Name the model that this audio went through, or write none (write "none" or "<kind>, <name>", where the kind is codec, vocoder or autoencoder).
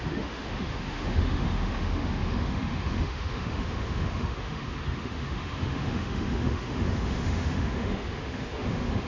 autoencoder, DAC-VAE